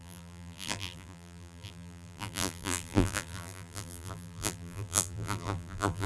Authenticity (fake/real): fake